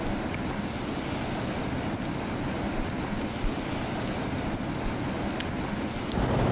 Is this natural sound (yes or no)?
yes